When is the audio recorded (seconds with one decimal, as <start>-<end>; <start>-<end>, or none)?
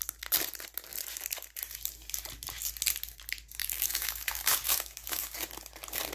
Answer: 0.0-3.6; 5.4-6.1